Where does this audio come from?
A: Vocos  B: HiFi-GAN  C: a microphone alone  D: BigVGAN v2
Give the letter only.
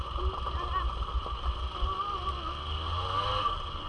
C